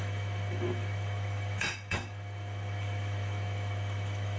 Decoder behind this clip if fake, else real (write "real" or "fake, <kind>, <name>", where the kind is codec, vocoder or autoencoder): fake, autoencoder, DAC-VAE